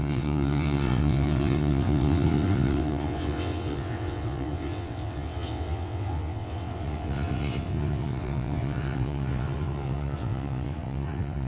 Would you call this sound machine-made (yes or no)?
yes